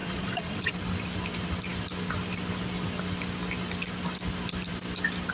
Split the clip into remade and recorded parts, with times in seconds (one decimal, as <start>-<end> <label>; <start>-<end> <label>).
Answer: 0.0-0.7 remade; 0.7-5.3 recorded